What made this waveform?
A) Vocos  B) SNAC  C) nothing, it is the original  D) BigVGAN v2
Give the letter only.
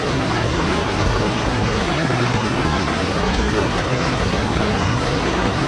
B